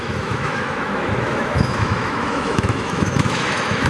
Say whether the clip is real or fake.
fake